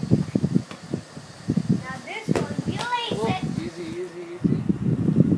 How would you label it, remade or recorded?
recorded